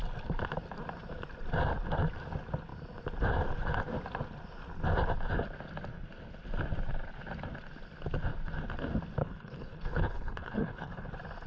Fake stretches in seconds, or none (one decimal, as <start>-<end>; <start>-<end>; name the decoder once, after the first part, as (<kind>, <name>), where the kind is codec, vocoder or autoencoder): 9.2-11.1 (codec, HILCodec)